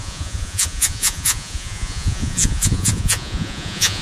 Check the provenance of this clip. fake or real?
fake